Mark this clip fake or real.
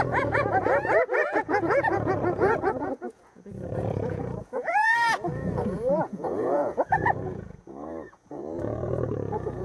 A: fake